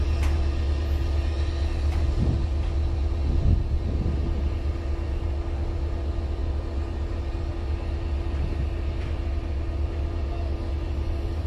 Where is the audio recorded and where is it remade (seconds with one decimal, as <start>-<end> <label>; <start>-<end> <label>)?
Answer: 0.0-11.5 recorded